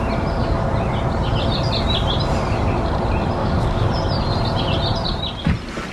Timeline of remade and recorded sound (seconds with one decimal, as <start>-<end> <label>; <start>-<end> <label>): 0.0-3.4 recorded; 3.4-3.9 remade; 3.9-5.9 recorded